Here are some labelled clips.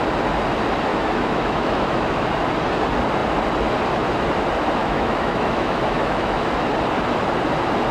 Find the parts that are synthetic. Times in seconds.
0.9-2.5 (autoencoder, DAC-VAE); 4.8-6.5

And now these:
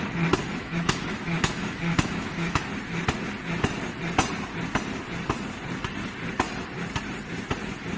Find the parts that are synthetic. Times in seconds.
0.6-2.6 (autoencoder, DAC-VAE)